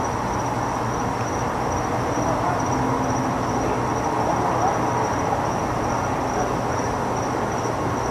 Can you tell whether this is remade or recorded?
recorded